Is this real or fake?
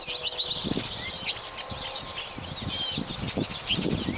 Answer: real